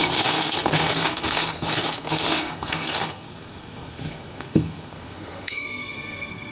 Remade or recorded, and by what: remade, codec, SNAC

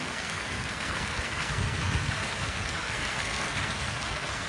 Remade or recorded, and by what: remade, codec, SNAC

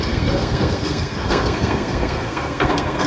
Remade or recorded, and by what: remade, codec, SNAC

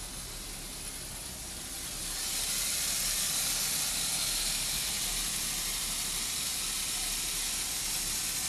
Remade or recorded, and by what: recorded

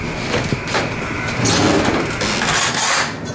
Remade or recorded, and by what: recorded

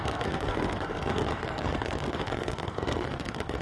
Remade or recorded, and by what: remade, codec, SNAC